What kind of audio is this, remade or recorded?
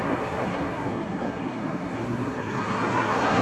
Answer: remade